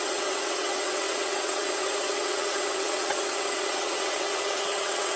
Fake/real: fake